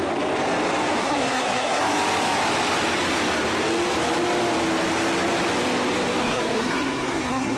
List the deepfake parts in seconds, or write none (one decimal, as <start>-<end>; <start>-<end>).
1.0-1.8; 6.2-7.6